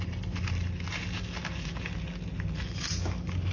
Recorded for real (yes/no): yes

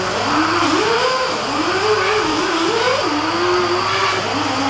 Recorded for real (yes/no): yes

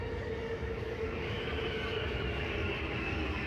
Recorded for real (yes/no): no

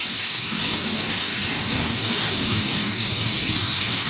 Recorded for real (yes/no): no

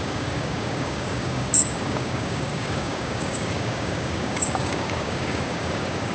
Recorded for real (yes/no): no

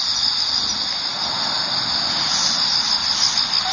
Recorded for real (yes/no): yes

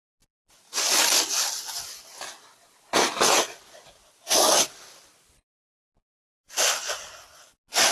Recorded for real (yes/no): yes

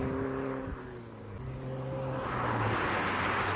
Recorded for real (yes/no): yes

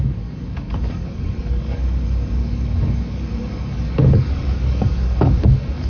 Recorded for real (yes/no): no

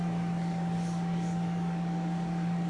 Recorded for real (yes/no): no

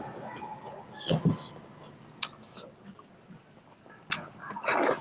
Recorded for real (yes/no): yes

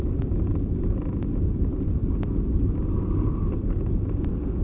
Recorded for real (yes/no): yes